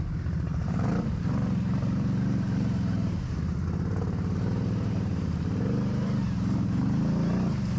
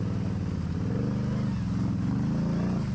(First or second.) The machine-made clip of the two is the first